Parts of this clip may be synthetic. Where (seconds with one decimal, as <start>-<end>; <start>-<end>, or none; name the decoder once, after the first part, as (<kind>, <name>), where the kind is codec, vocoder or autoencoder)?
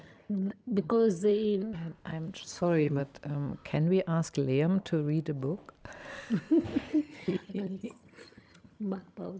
0.0-1.3 (vocoder, HiFi-GAN); 2.4-3.0; 6.9-9.4